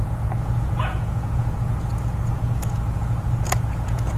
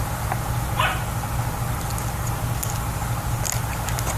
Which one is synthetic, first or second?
first